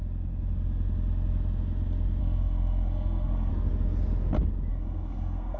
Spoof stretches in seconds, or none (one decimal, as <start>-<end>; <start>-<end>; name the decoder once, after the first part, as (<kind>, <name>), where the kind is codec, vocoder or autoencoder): 2.2-3.5 (codec, SNAC); 4.7-5.6